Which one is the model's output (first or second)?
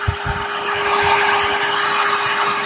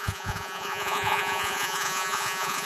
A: second